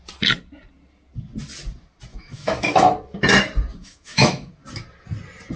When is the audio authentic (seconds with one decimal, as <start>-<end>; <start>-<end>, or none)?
0.0-2.1; 2.9-3.8; 4.5-5.6